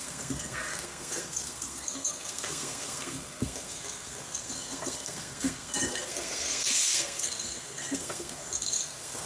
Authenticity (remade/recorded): remade